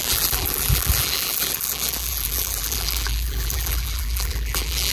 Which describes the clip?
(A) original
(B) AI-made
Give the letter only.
B